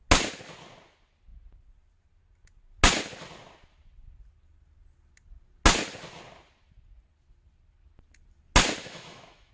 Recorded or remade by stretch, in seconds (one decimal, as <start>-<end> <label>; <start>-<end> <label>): 0.0-8.8 recorded; 8.8-9.5 remade